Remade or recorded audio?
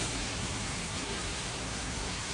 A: remade